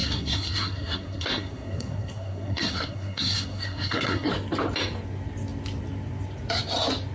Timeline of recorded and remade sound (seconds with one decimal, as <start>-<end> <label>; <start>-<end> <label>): 0.0-4.3 remade; 4.3-7.1 recorded

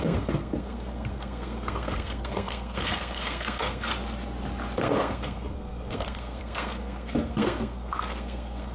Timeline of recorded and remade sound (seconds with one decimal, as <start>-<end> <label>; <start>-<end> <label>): 0.0-3.9 remade; 3.9-4.8 recorded; 4.8-8.7 remade

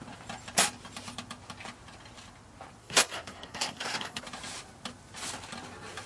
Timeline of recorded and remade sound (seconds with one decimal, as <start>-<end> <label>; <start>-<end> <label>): 0.0-2.8 recorded; 2.8-4.2 remade; 4.2-6.1 recorded

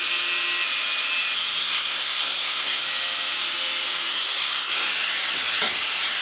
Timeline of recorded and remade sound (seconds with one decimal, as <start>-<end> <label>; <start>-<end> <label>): 0.0-1.6 recorded; 1.6-2.8 remade; 2.8-4.1 recorded; 4.1-4.9 remade; 4.9-6.2 recorded

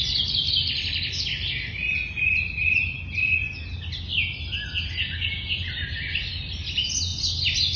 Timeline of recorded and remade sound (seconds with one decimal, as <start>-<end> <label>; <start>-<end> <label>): 0.0-7.8 recorded

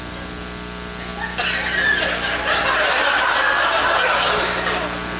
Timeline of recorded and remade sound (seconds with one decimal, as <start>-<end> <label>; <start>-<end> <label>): 0.0-5.2 recorded

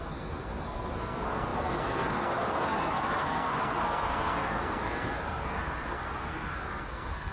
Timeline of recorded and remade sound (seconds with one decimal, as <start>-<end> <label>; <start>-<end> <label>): 0.0-7.3 remade

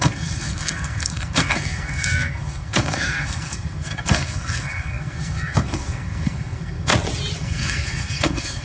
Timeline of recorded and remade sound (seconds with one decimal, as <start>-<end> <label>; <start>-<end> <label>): 0.0-6.9 remade; 6.9-7.4 recorded; 7.4-8.6 remade